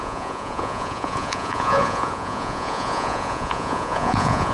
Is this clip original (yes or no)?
no